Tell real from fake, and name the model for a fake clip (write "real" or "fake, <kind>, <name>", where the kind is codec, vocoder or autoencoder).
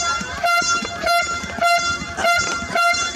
fake, vocoder, BigVGAN v2